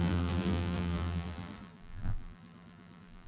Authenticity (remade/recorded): remade